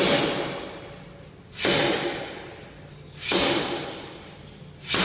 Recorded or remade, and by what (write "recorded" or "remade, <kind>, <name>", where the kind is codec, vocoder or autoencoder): recorded